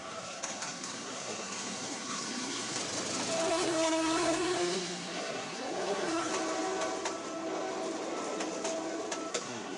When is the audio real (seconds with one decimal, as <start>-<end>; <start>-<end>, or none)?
2.8-3.5; 6.3-9.3